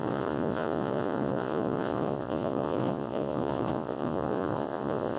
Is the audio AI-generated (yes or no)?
yes